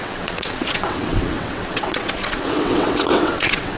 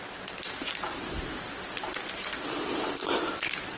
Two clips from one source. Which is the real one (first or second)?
second